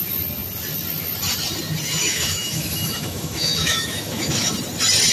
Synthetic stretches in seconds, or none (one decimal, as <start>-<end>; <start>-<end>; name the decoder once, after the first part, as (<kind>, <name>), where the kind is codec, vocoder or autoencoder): 2.0-4.5 (autoencoder, DAC-VAE)